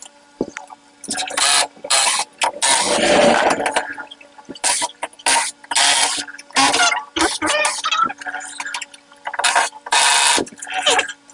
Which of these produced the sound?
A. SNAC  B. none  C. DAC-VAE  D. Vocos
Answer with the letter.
B